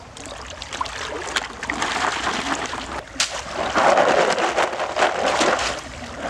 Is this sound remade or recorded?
recorded